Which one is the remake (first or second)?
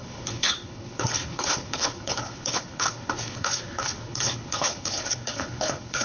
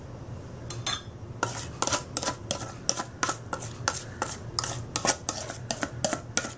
first